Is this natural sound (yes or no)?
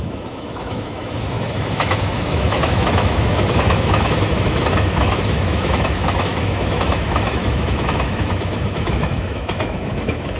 no